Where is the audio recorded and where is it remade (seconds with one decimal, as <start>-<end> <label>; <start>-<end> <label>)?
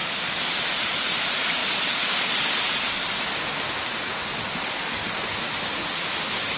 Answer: 0.0-6.6 recorded